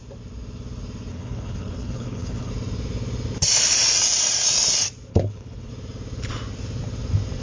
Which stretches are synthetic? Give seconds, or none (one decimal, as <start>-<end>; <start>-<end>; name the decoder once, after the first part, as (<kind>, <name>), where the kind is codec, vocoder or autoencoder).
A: 1.1-2.5 (codec, HILCodec); 5.1-5.7